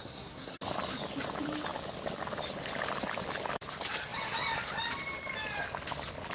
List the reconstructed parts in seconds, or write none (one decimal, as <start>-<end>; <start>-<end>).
0.0-0.6